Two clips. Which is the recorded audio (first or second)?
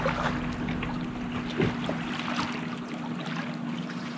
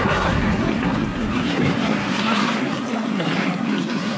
first